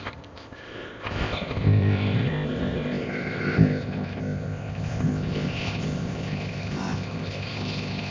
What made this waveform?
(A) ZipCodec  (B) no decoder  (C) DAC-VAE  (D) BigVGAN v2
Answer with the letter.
A